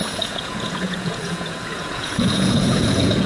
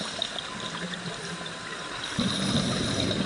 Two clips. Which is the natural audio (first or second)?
second